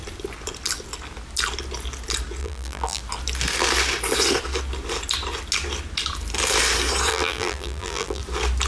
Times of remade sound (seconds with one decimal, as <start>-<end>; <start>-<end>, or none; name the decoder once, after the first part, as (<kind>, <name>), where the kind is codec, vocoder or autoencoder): 2.4-3.0 (vocoder, BigVGAN v2); 7.1-8.2